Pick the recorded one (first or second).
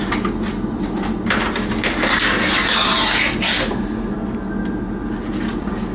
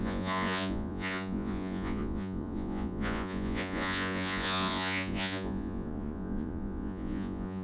first